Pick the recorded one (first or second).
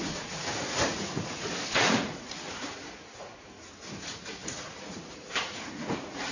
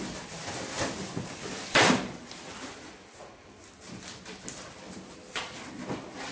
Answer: second